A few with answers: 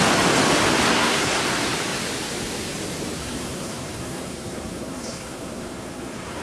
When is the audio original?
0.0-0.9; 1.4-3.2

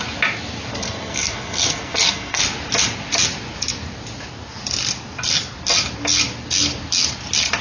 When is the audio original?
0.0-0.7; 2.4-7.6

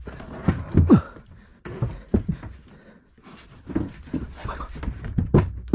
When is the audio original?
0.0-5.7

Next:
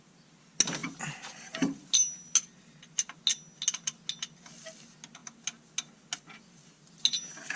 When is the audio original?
0.0-7.6